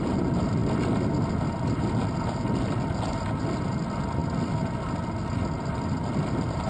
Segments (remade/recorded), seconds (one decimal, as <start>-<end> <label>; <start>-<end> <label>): 0.0-6.7 recorded